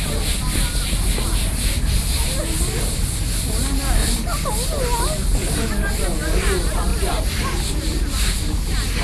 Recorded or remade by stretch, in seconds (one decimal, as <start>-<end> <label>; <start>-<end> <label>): 0.0-9.0 recorded